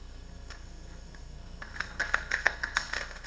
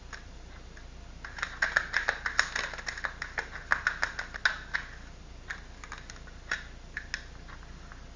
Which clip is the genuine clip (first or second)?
second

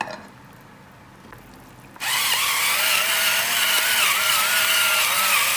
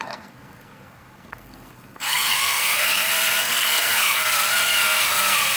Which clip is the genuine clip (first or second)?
first